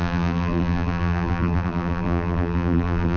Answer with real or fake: fake